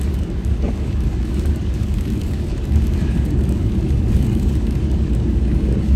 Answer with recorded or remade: remade